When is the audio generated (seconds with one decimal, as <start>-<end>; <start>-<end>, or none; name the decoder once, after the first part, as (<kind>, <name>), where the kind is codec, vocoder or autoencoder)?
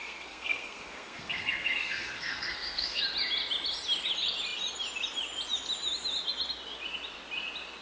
0.0-3.0 (codec, SNAC)